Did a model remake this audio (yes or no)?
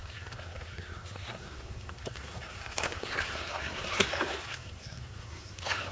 yes